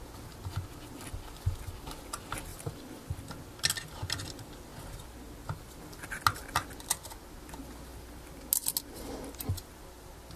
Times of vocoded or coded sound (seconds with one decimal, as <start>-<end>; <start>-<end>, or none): 2.5-3.2